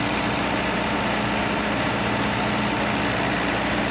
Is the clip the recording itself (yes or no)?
yes